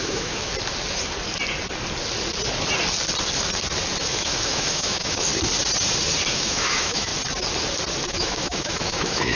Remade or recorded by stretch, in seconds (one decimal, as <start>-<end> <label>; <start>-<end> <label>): 0.0-0.5 remade; 0.5-4.0 recorded; 4.0-5.3 remade; 5.3-6.3 recorded; 6.3-7.1 remade; 7.1-8.1 recorded; 8.1-9.4 remade